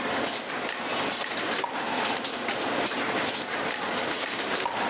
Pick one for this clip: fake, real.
fake